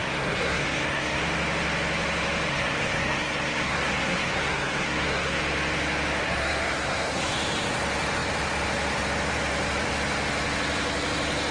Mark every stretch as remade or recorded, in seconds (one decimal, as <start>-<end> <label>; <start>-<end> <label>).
0.0-1.2 remade; 1.2-2.5 recorded; 2.5-5.4 remade; 5.4-6.2 recorded; 6.2-7.3 remade; 7.3-11.5 recorded